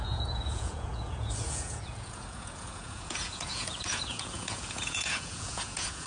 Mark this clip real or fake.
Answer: fake